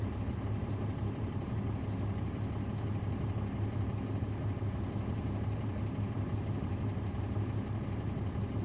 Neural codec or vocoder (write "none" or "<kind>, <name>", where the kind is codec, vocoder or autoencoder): none